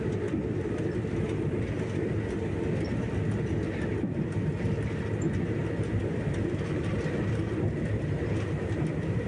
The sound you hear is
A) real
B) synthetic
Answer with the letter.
A